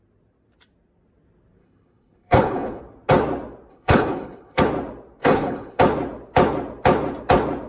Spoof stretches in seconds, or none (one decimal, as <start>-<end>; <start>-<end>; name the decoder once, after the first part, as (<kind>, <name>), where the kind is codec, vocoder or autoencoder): 1.6-2.8 (codec, HILCodec); 3.7-4.6; 5.2-5.8